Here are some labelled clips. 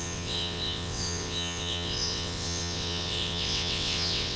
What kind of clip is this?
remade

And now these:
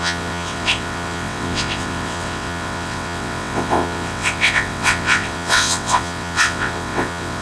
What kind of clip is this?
remade